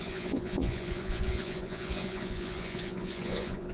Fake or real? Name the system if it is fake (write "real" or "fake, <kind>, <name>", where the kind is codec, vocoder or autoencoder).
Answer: fake, vocoder, Vocos